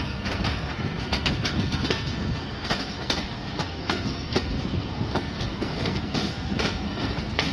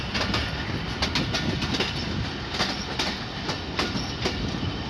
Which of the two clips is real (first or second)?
second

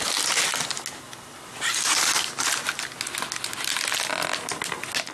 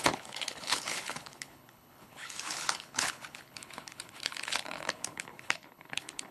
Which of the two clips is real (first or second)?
first